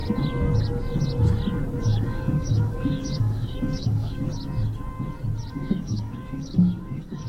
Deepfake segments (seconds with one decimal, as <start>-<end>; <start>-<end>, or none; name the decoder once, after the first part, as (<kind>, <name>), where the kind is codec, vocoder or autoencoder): 1.8-4.3 (codec, DAC); 5.5-7.3